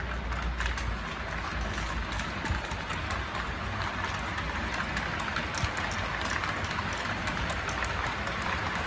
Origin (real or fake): real